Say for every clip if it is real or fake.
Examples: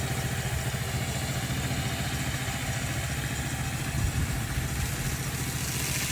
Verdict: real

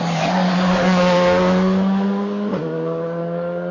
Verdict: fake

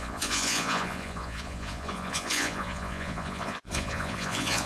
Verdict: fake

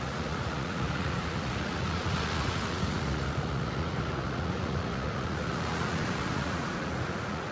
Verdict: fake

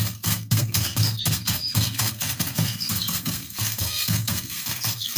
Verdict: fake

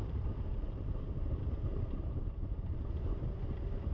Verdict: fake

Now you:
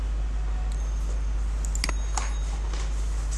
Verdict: real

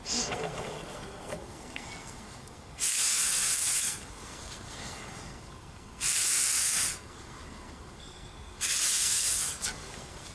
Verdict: fake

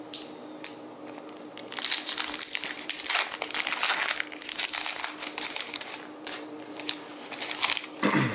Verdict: real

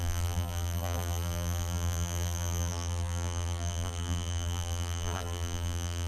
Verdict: fake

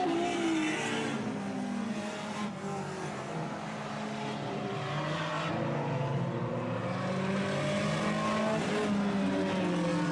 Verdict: real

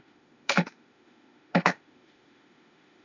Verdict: fake